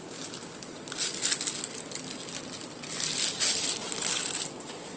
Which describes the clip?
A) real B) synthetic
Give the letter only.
A